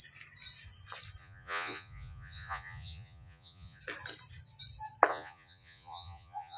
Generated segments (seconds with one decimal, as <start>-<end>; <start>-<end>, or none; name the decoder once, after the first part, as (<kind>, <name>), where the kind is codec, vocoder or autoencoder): 1.2-3.8 (vocoder, Vocos); 5.1-6.6